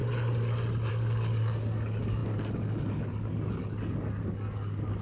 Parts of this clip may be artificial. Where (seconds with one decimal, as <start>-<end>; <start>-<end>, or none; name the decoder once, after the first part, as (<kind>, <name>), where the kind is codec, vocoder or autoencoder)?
0.9-5.0 (codec, DAC)